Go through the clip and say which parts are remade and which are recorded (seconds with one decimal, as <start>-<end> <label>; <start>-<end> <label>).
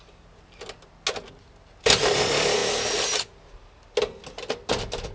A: 0.0-5.1 recorded